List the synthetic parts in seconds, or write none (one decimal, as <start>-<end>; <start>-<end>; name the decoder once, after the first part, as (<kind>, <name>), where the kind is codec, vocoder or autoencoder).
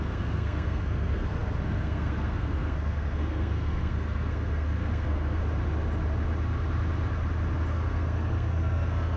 0.0-5.4 (codec, SNAC); 7.7-9.2